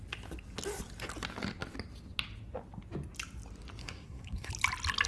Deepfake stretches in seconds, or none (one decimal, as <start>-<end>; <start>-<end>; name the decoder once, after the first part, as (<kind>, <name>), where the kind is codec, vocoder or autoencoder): 3.8-4.5 (codec, SNAC)